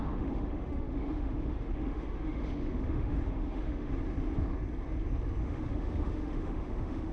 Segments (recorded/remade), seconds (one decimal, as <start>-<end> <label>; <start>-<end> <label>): 0.0-3.9 remade; 3.9-5.4 recorded; 5.4-7.1 remade

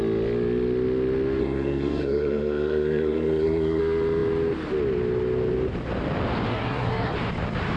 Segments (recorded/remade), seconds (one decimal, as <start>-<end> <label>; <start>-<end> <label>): 0.0-1.4 recorded; 1.4-3.8 remade; 3.8-6.5 recorded; 6.5-7.1 remade; 7.1-7.8 recorded

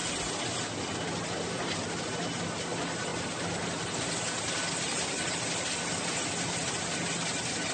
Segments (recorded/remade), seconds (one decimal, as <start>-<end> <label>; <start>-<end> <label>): 0.0-7.7 recorded

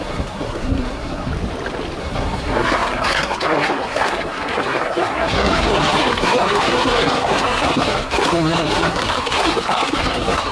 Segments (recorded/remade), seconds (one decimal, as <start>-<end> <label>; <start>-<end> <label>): 0.0-1.3 remade; 1.3-2.0 recorded; 2.0-10.5 remade

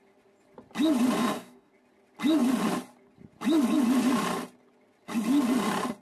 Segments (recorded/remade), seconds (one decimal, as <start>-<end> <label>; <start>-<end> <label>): 0.0-1.2 recorded; 1.2-1.7 remade; 1.7-6.0 recorded

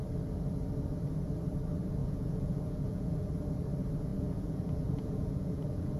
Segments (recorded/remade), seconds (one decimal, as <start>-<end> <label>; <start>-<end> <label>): 0.0-2.0 recorded; 2.0-3.3 remade; 3.3-4.1 recorded; 4.1-6.0 remade

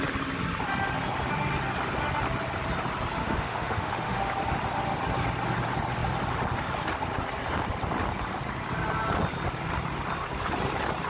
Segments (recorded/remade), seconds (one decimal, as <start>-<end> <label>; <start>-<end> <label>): 0.0-3.2 recorded; 3.2-4.3 remade; 4.3-11.1 recorded

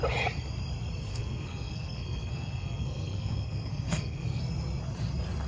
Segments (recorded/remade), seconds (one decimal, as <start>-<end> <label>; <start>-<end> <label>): 0.0-1.1 recorded; 1.1-4.4 remade; 4.4-5.5 recorded